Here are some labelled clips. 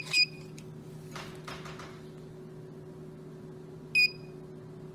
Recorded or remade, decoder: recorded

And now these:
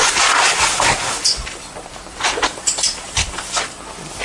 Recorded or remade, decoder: recorded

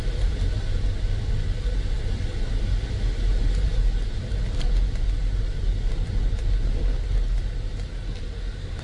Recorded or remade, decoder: recorded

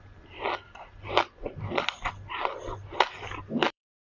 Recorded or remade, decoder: remade, vocoder, BigVGAN v2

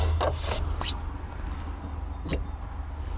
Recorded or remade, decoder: recorded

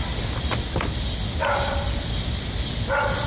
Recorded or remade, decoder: recorded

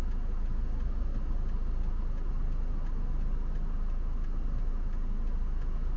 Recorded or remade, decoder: recorded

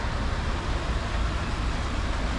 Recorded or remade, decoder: recorded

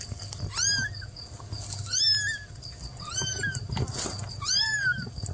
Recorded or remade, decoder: recorded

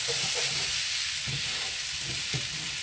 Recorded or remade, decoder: recorded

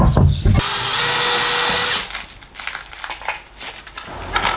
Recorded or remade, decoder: recorded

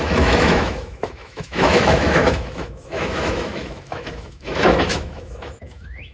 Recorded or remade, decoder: remade, autoencoder, DAC-VAE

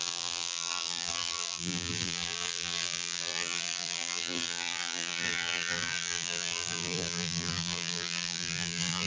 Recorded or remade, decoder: remade, vocoder, BigVGAN v2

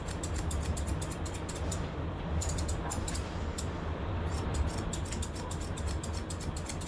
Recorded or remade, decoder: recorded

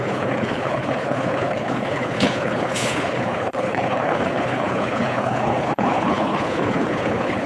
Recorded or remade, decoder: remade, codec, HILCodec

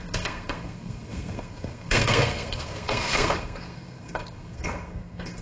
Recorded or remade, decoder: remade, codec, SNAC